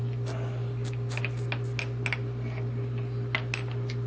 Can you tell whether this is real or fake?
real